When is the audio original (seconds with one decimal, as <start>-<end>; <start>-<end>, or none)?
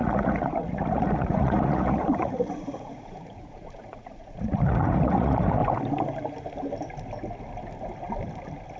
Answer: 5.6-8.8